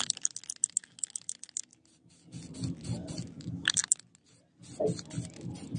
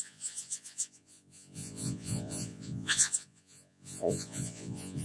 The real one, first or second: first